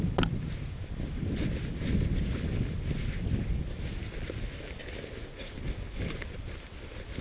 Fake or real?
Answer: real